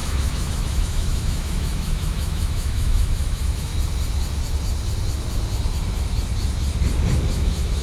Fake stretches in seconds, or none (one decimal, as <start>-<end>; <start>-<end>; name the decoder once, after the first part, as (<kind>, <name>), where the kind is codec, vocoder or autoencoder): 0.0-3.7 (autoencoder, DAC-VAE); 7.3-7.8

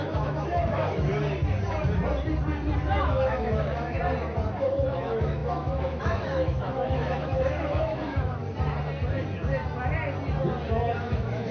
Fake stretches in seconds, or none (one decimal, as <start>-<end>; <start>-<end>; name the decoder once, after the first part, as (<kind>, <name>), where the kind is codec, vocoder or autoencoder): 0.0-1.1 (autoencoder, DAC-VAE); 3.0-4.0; 4.6-8.4; 11.0-11.5